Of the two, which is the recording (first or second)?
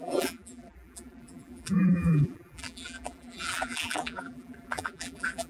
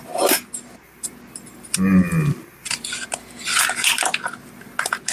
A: second